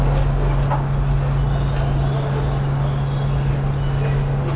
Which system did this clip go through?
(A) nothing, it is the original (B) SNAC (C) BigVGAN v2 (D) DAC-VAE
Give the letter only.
A